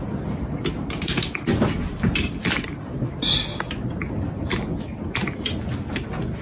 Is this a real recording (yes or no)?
yes